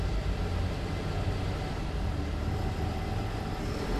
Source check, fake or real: real